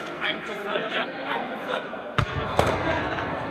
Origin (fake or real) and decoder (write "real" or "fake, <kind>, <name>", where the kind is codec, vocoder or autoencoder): fake, codec, SNAC